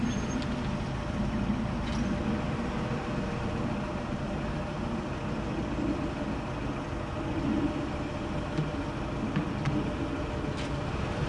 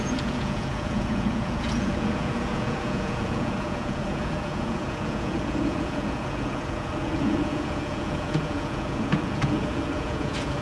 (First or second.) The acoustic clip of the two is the first